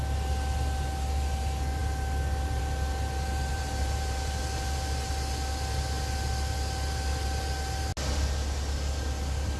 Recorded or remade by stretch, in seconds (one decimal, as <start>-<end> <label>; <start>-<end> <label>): 0.0-3.5 recorded; 3.5-4.4 remade; 4.4-9.6 recorded